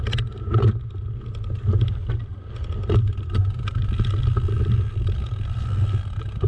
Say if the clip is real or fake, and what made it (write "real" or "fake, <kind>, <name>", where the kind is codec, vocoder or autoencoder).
real